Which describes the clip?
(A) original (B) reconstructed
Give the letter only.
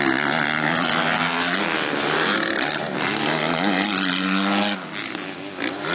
A